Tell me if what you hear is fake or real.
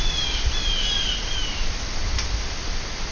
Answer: real